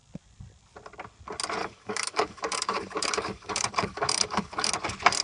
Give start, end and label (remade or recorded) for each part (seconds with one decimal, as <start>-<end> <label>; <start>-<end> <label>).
0.0-1.6 recorded; 1.6-4.7 remade; 4.7-5.2 recorded